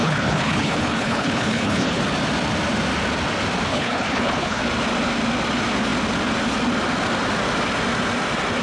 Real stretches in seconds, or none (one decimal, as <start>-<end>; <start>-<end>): 2.0-3.7; 4.6-8.6